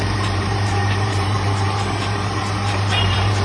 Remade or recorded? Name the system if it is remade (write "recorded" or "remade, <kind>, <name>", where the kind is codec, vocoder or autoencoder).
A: remade, vocoder, BigVGAN v2